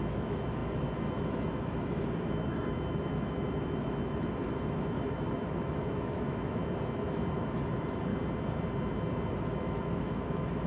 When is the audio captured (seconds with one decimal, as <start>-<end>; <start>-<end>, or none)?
6.6-7.3; 8.1-9.3